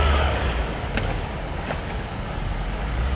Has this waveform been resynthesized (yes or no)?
yes